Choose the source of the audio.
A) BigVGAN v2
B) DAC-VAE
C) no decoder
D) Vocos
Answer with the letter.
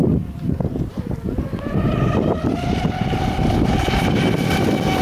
C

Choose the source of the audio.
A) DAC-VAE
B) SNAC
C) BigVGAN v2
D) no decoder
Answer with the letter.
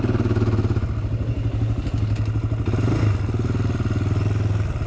D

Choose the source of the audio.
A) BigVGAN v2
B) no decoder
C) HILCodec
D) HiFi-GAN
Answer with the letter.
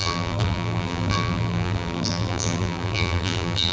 A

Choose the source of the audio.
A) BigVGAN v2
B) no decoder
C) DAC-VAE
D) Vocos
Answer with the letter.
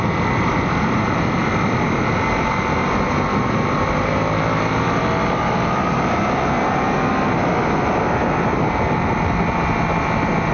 B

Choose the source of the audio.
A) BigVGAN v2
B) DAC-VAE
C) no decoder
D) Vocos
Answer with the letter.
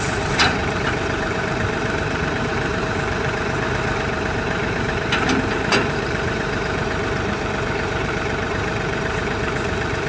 A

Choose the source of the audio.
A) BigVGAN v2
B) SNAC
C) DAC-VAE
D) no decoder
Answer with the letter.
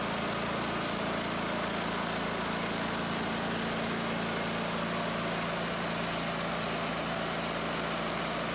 D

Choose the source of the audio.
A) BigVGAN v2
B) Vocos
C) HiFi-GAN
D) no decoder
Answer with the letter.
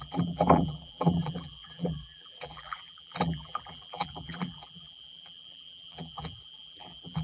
A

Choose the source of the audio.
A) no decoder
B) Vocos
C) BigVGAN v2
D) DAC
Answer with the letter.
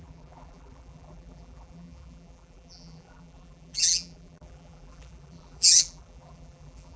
C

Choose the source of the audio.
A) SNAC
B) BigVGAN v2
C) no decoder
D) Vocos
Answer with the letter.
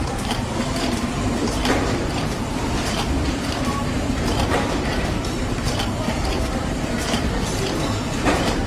B